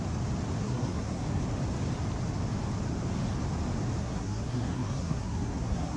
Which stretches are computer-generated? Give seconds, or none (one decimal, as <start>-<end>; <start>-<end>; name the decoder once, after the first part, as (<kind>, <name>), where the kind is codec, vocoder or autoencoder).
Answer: 0.6-1.4 (codec, SNAC); 4.0-6.0